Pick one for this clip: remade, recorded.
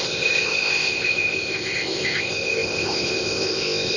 remade